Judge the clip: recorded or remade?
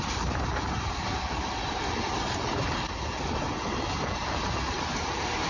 remade